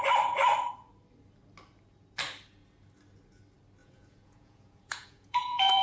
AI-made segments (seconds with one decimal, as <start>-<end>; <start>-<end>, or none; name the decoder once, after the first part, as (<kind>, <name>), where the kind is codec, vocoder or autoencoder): 3.8-5.8 (vocoder, Vocos)